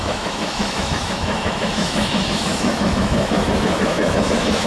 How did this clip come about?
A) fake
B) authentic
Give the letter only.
A